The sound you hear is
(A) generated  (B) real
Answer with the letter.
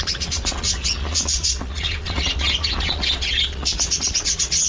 A